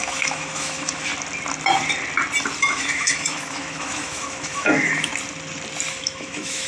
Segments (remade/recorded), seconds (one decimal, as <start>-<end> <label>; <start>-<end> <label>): 0.0-1.1 remade; 1.1-2.6 recorded; 2.6-5.1 remade; 5.1-6.0 recorded; 6.0-6.7 remade